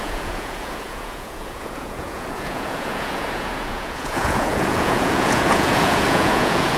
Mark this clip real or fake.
fake